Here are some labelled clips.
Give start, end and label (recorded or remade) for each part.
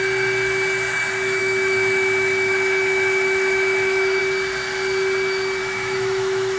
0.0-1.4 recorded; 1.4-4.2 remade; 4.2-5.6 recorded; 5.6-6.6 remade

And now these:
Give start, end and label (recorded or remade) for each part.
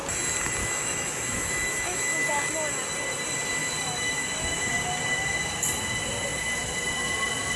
0.0-0.6 recorded; 0.6-2.3 remade; 2.3-3.6 recorded; 3.6-4.7 remade; 4.7-7.6 recorded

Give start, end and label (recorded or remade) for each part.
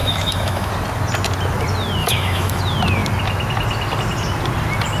0.0-0.7 remade; 0.7-2.0 recorded; 2.0-2.6 remade; 2.6-5.0 recorded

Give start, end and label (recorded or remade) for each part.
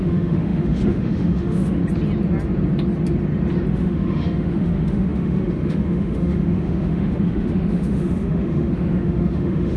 0.0-1.8 remade; 1.8-3.7 recorded; 3.7-9.8 remade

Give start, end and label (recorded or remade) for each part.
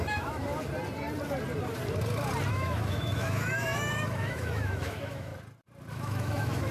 0.0-0.5 remade; 0.5-2.5 recorded; 2.5-5.3 remade; 5.3-5.9 recorded; 5.9-6.7 remade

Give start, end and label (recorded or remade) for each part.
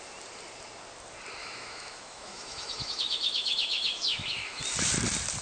0.0-1.4 recorded; 1.4-4.6 remade; 4.6-5.4 recorded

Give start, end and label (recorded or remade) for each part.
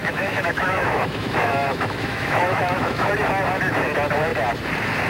0.0-3.1 remade; 3.1-5.1 recorded